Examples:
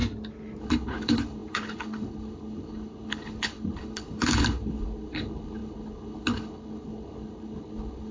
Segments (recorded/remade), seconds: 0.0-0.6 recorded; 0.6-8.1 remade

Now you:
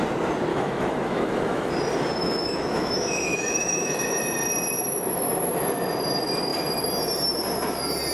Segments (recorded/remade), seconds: 0.0-0.5 recorded; 0.5-1.7 remade; 1.7-2.2 recorded; 2.2-4.2 remade; 4.2-8.1 recorded

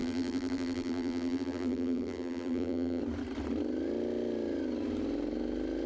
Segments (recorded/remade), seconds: 0.0-3.0 remade; 3.0-5.9 recorded